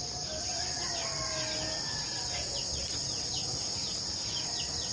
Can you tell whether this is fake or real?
real